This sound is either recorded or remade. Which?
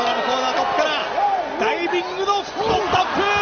recorded